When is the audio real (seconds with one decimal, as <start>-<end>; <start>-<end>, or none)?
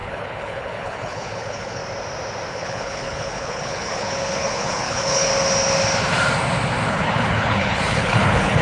1.8-2.5; 5.3-6.9